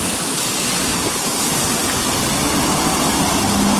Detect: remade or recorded recorded